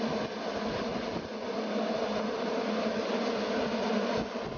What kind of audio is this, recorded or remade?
recorded